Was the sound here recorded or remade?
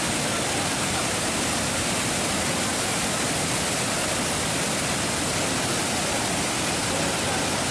recorded